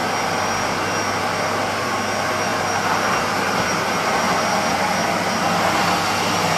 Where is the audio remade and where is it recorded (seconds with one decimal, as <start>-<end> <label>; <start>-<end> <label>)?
0.0-6.6 recorded